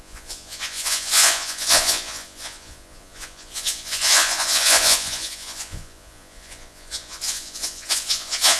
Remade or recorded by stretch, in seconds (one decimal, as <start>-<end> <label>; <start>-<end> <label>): 0.0-8.6 remade